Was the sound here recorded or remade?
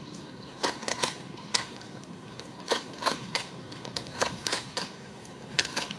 remade